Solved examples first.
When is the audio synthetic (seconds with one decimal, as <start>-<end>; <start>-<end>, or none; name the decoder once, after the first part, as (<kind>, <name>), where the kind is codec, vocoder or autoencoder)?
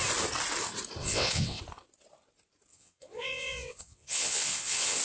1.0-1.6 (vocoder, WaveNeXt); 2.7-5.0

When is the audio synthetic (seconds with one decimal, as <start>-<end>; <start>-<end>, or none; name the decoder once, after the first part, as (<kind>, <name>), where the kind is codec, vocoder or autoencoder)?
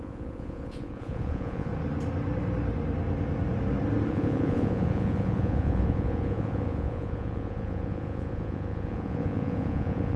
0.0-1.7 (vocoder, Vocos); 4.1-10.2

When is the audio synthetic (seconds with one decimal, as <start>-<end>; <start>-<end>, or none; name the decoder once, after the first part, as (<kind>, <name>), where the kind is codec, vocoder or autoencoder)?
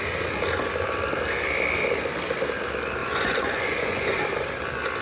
3.0-4.2 (vocoder, Vocos)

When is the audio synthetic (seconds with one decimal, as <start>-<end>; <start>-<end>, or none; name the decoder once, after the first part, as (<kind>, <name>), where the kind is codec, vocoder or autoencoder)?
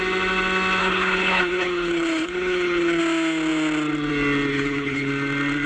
0.8-3.0 (codec, HILCodec); 4.5-5.1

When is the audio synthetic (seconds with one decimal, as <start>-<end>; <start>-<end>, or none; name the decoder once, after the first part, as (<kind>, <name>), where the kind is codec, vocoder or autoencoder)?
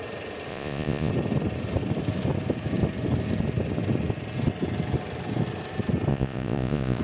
0.5-1.1 (vocoder, Vocos); 6.1-7.0